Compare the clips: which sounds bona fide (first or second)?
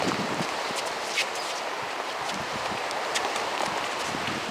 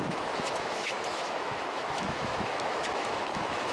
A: first